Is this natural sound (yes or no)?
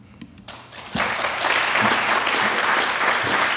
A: yes